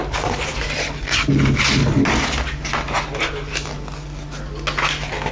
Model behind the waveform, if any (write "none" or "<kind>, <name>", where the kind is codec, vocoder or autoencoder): none